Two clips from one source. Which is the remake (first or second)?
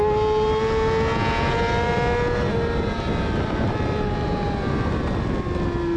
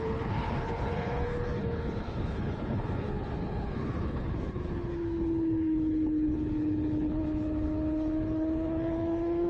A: second